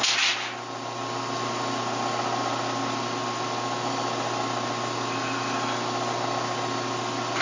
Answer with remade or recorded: recorded